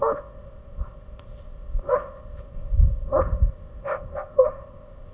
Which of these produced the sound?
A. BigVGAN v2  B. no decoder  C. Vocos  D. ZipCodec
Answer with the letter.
D